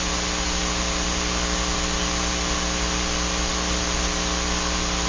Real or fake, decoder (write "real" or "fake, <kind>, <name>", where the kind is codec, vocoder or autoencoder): real